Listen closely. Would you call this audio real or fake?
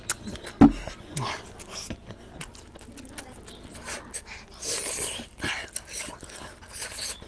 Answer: real